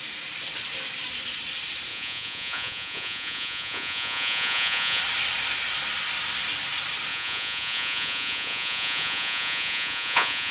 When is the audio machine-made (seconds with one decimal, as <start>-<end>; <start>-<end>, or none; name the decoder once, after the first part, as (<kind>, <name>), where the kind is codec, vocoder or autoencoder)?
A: 1.9-5.0 (vocoder, Vocos); 7.1-10.5